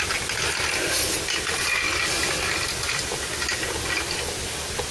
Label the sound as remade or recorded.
recorded